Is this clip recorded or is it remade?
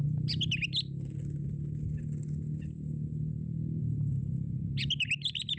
recorded